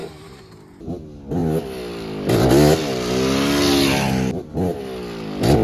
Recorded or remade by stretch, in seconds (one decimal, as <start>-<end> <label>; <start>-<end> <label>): 0.0-0.9 remade; 0.9-5.6 recorded

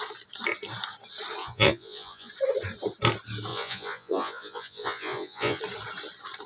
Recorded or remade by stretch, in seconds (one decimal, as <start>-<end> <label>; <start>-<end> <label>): 0.0-1.4 recorded; 1.4-2.3 remade; 2.3-3.5 recorded; 3.5-5.6 remade; 5.6-6.5 recorded

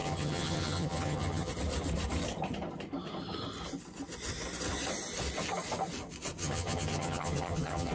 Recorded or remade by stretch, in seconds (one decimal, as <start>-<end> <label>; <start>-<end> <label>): 0.0-1.5 remade; 1.5-6.4 recorded; 6.4-7.9 remade

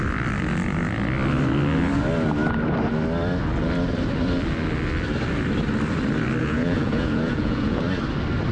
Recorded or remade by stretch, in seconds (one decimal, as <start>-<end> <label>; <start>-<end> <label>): 0.0-6.4 recorded; 6.4-7.8 remade; 7.8-8.5 recorded

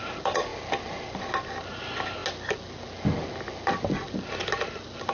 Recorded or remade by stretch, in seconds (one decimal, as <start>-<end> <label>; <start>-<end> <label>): 0.0-5.1 recorded

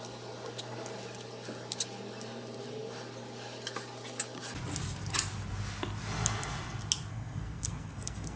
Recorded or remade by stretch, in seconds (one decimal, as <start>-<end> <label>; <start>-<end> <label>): 0.0-7.1 recorded; 7.1-8.4 remade

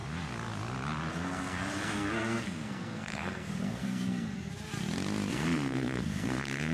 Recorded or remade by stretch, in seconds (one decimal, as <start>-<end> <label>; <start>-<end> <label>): 0.0-1.1 recorded; 1.1-4.5 remade; 4.5-5.3 recorded; 5.3-6.7 remade

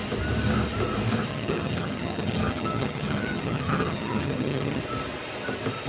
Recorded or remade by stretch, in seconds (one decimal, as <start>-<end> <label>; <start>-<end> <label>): 0.0-1.3 recorded; 1.3-4.8 remade; 4.8-5.9 recorded